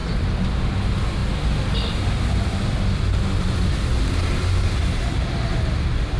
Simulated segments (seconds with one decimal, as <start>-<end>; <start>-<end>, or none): none